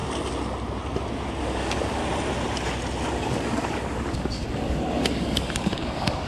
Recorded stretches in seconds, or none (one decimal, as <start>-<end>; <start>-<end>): 0.0-1.4; 2.0-3.1